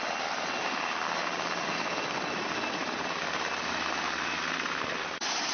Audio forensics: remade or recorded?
recorded